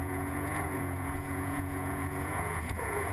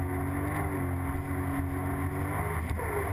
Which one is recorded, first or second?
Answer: second